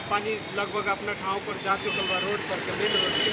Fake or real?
fake